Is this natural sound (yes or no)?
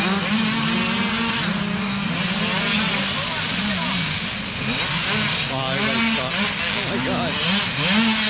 yes